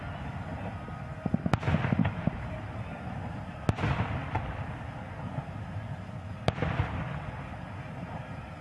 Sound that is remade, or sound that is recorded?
remade